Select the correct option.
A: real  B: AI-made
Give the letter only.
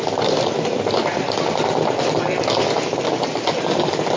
A